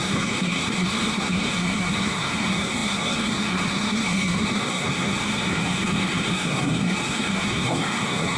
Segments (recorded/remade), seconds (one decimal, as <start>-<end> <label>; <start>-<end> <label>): 0.0-8.4 remade